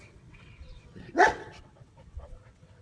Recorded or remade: remade